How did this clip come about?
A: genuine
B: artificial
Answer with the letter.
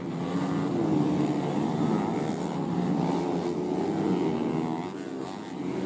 A